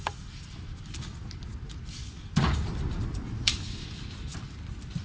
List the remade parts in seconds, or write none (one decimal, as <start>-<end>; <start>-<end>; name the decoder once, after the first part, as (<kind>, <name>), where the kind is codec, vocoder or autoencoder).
0.0-1.1 (vocoder, BigVGAN v2); 1.9-4.3